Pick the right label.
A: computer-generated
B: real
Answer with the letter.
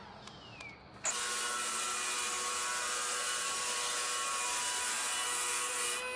B